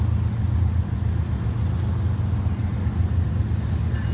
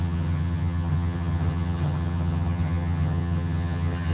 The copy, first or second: second